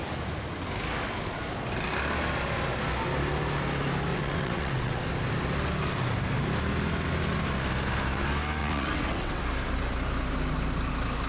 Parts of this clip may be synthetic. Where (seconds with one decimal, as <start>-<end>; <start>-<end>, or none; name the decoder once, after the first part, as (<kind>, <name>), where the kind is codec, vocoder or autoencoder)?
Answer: 4.1-5.0 (vocoder, WaveNeXt); 8.6-9.4